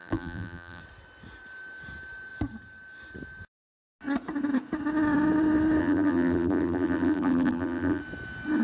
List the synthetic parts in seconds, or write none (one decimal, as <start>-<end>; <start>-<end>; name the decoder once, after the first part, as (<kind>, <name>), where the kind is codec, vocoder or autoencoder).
0.0-0.8 (vocoder, BigVGAN v2); 5.8-8.0